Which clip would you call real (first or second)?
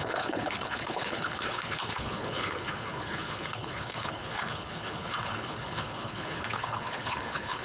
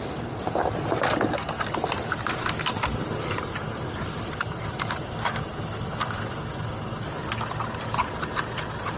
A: second